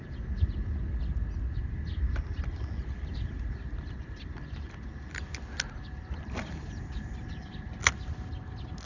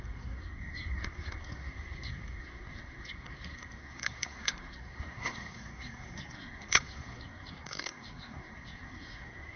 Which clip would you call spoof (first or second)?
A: second